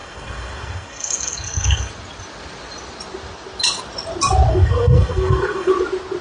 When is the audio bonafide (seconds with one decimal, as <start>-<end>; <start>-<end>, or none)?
1.9-4.5; 5.7-6.2